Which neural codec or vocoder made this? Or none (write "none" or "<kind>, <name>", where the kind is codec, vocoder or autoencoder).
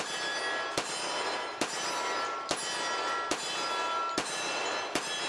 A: none